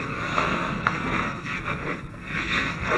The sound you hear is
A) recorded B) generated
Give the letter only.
B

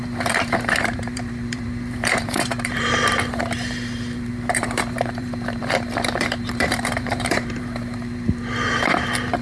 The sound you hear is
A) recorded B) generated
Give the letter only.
B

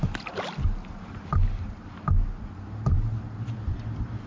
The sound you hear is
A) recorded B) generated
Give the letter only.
A